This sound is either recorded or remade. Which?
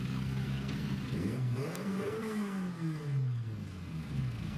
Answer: remade